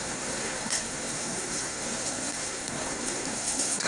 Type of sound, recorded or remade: remade